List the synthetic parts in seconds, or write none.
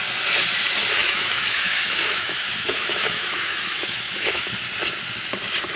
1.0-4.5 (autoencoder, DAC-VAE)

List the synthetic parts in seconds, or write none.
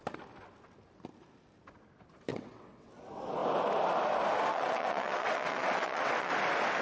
2.3-2.9 (vocoder, WaveNeXt); 4.5-6.3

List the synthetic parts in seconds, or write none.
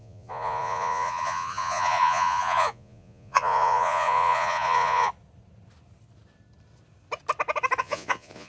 0.0-5.1 (vocoder, Vocos); 7.8-8.5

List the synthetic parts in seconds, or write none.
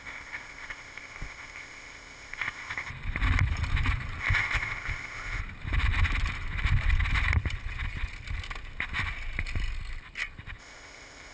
0.0-2.9 (codec, ZipCodec); 4.2-5.4; 10.6-11.3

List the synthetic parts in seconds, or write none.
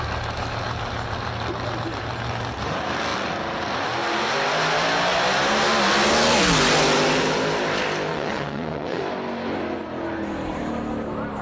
8.1-9.0 (vocoder, WaveNeXt)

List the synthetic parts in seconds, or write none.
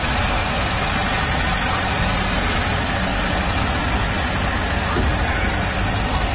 0.4-0.9 (vocoder, BigVGAN v2); 3.1-5.0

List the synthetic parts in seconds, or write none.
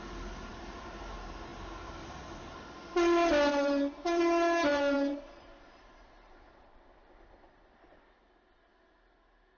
3.5-4.2 (vocoder, BigVGAN v2); 4.7-6.9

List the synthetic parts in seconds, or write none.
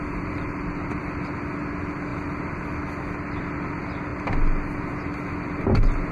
none